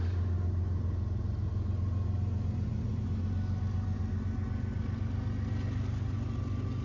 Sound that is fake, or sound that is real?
real